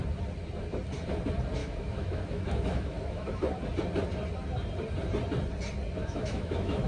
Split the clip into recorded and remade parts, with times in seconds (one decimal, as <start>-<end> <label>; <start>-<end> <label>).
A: 0.0-1.6 recorded; 1.6-3.3 remade; 3.3-6.0 recorded; 6.0-6.9 remade